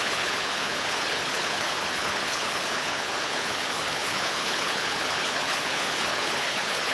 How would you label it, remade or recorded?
remade